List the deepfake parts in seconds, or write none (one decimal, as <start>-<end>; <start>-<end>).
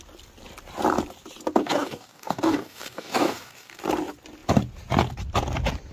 1.6-3.8